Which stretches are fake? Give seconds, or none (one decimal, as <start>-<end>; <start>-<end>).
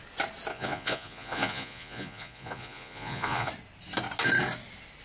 0.5-3.5